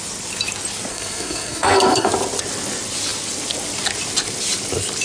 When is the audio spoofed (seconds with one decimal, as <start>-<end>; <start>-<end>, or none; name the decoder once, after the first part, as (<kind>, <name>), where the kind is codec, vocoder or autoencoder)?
0.9-2.1 (codec, SNAC)